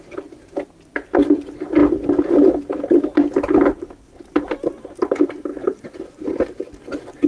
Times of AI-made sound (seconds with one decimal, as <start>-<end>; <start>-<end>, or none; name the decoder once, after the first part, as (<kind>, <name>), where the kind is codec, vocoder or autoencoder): none